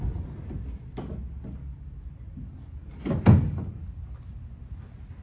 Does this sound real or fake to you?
real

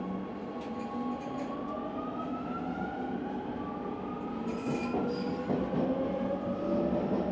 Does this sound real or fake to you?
real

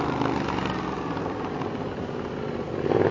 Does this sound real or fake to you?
real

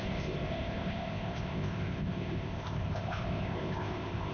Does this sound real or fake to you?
fake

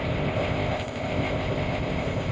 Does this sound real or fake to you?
fake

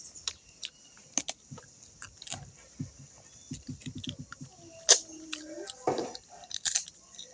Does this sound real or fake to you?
real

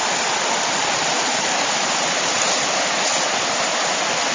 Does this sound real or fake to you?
real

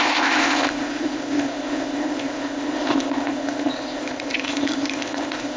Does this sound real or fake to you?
fake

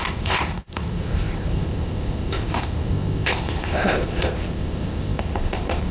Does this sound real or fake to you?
fake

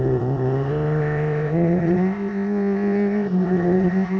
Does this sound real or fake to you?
fake